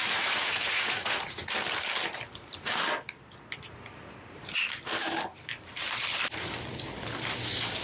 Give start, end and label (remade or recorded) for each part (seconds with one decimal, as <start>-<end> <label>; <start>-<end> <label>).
0.0-1.5 remade; 1.5-7.8 recorded